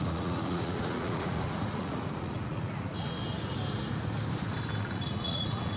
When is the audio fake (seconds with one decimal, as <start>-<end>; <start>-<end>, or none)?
0.0-3.2; 4.8-5.8